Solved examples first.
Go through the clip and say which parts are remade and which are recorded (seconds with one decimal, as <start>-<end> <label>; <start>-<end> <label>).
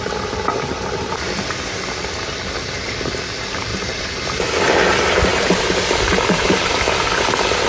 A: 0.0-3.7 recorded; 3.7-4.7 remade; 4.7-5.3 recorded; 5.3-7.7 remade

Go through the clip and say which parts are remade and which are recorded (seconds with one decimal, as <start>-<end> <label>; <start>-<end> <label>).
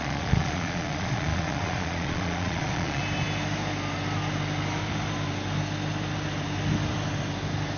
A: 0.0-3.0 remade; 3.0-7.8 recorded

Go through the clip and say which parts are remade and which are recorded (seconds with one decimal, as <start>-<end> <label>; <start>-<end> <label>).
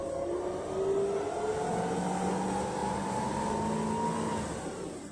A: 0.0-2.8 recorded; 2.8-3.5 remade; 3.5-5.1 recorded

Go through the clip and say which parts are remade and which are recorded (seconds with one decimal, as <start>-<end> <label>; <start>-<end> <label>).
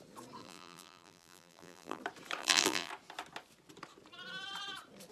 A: 0.0-0.4 recorded; 0.4-2.0 remade; 2.0-2.4 recorded; 2.4-2.9 remade; 2.9-5.1 recorded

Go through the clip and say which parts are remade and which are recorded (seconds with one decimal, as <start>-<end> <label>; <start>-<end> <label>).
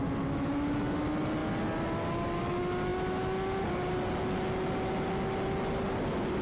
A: 0.0-6.4 recorded